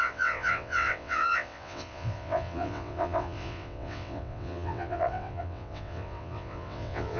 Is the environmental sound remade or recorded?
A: remade